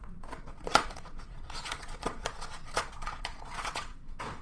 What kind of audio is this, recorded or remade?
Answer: remade